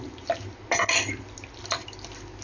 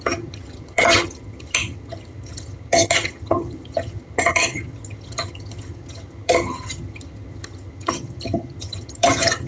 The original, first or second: first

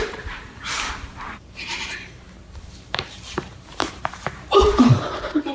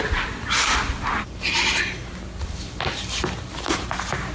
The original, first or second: second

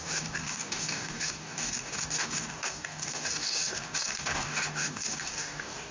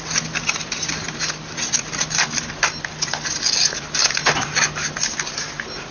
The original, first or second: second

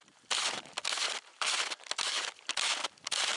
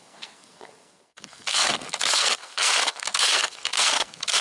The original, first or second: first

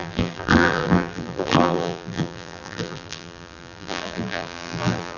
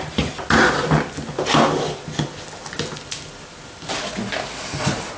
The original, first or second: second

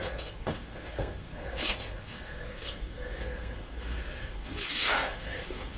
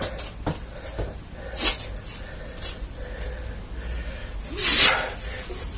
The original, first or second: second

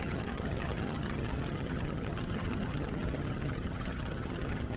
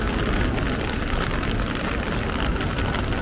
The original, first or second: second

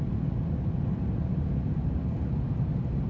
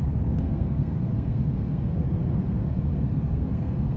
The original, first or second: first